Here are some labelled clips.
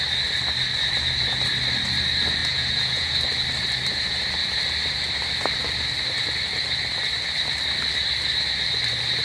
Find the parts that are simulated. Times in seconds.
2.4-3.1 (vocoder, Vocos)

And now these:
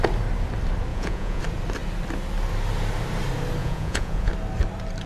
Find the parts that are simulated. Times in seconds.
0.9-1.4 (vocoder, Vocos); 3.6-4.3

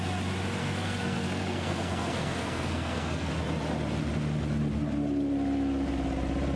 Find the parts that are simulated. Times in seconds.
0.6-3.3 (codec, SNAC)

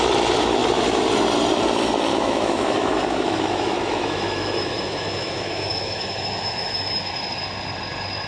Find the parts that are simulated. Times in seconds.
2.1-7.1 (autoencoder, DAC-VAE)

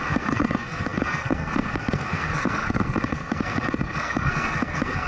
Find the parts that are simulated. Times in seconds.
0.0-5.1 (codec, SNAC)

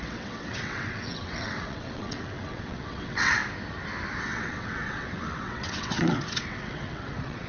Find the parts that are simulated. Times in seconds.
0.0-3.4 (vocoder, WaveNeXt); 4.2-7.5